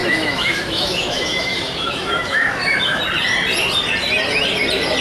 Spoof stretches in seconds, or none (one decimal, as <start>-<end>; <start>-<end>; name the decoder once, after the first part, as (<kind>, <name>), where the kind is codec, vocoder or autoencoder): 0.0-3.0 (autoencoder, DAC-VAE)